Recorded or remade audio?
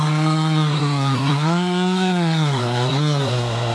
remade